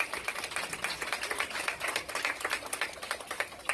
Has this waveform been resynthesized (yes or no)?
no